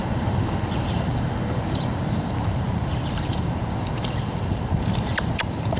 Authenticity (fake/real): fake